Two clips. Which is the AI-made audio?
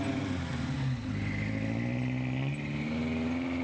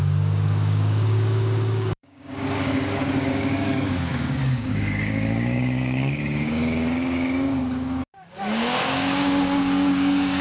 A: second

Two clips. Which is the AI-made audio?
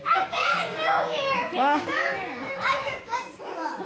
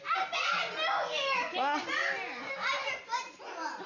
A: first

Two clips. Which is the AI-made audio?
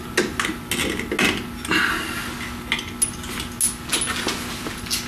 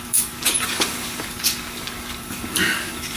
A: second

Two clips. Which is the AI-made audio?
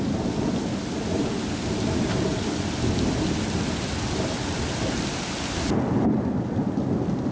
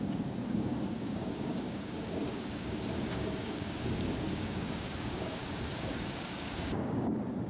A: second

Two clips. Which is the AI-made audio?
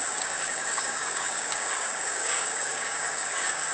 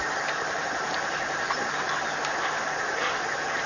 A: first